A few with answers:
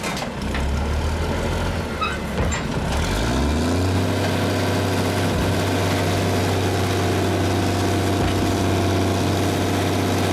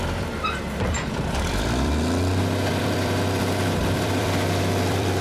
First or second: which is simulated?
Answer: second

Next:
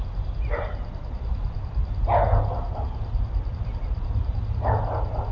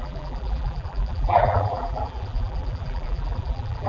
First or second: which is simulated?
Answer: second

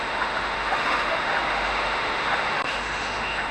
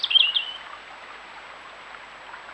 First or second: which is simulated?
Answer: first